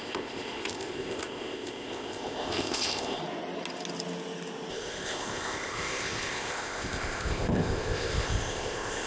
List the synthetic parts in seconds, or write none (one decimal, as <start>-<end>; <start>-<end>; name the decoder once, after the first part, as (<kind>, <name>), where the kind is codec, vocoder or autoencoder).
0.0-3.2 (codec, ZipCodec); 4.7-9.1